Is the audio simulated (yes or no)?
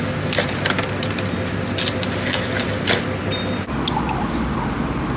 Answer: no